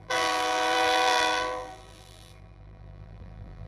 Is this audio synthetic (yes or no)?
yes